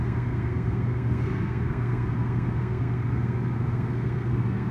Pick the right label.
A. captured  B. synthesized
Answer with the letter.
B